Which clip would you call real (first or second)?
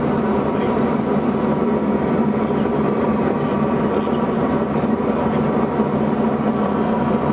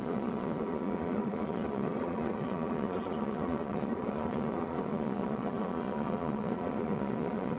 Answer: first